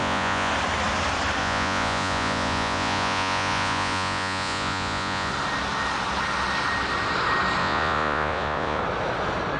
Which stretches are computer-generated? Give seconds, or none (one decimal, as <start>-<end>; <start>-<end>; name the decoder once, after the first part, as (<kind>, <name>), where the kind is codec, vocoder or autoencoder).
0.0-0.5 (vocoder, Vocos); 1.4-5.3; 7.6-8.8